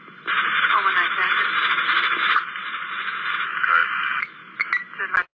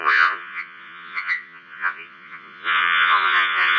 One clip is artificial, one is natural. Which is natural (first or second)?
first